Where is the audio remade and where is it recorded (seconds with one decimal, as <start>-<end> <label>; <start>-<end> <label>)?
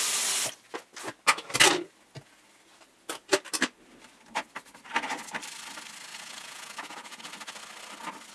0.0-6.1 recorded; 6.1-7.2 remade; 7.2-8.3 recorded